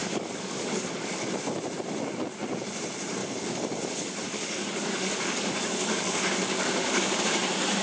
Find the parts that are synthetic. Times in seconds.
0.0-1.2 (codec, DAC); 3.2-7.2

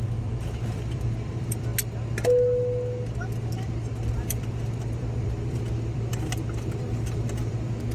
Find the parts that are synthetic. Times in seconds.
0.0-1.7 (vocoder, BigVGAN v2); 4.1-7.9